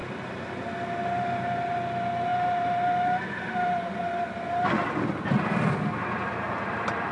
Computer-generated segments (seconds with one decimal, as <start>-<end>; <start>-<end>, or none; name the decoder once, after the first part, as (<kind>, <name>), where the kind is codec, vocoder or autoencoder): none

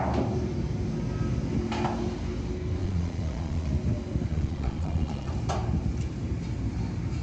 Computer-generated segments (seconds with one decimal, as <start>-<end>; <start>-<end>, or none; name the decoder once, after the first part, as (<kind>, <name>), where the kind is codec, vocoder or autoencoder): 2.8-3.7 (vocoder, Vocos); 4.3-5.3

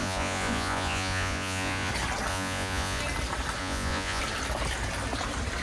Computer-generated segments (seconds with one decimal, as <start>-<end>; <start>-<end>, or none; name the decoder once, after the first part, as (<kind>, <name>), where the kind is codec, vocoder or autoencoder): 0.0-1.9 (vocoder, Vocos); 2.3-3.0; 3.6-4.2

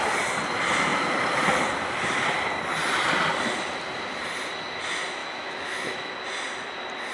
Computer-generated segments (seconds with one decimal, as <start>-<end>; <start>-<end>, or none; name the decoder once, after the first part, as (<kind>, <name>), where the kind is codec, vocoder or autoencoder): 5.2-6.1 (autoencoder, DAC-VAE)

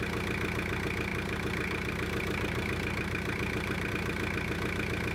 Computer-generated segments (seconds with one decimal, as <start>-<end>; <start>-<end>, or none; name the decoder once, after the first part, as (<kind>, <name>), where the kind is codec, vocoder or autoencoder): 1.1-3.9 (vocoder, BigVGAN v2)